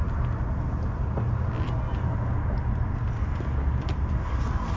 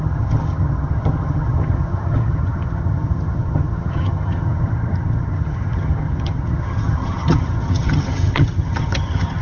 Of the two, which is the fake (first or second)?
second